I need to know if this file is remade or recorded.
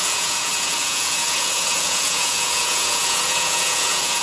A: remade